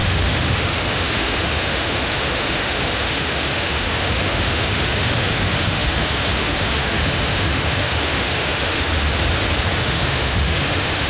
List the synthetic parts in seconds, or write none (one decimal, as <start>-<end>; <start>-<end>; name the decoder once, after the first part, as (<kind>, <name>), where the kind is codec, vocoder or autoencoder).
0.0-8.9 (autoencoder, DAC-VAE); 9.8-11.1